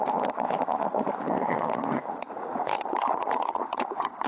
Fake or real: fake